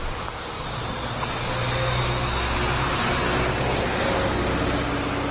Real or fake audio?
real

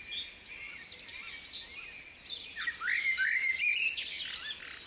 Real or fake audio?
real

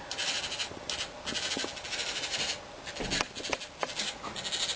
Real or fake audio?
real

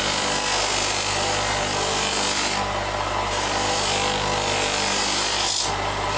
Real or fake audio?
real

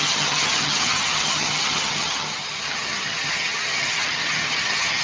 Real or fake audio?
fake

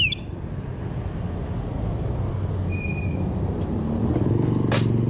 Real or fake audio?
real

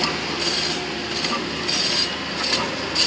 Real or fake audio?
real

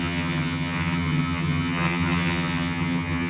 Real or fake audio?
fake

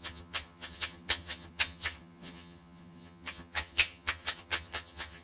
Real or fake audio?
fake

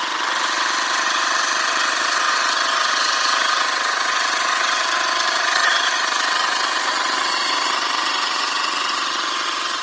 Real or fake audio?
fake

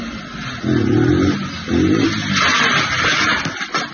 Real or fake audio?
real